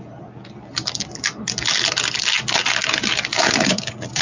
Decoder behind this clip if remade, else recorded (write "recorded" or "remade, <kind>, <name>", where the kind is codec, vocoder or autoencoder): recorded